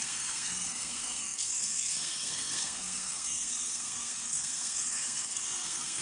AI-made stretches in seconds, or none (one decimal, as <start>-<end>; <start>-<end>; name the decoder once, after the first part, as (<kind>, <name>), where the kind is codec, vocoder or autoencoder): 0.0-6.0 (codec, SNAC)